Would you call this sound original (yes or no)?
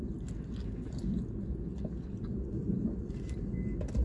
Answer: yes